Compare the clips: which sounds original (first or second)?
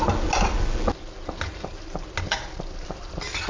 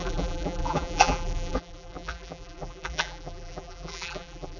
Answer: first